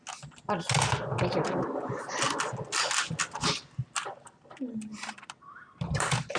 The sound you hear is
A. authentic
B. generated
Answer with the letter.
A